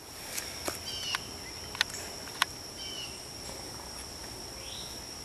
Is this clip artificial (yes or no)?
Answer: no